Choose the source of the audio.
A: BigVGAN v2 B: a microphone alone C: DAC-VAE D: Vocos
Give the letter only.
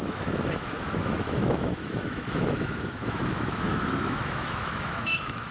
C